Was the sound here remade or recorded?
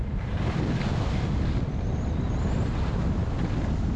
recorded